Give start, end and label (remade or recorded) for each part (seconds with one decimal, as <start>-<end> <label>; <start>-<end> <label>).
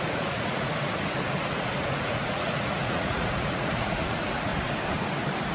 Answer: 0.0-4.5 remade; 4.5-5.5 recorded